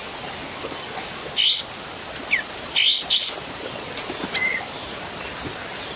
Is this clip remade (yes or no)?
no